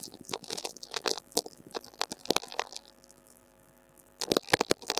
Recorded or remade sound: remade